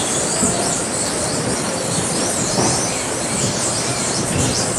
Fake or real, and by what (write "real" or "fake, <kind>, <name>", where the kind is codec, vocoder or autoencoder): fake, vocoder, BigVGAN v2